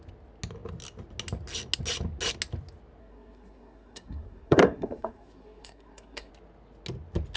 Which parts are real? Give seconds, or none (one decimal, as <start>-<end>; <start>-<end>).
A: 0.0-3.0; 6.3-7.4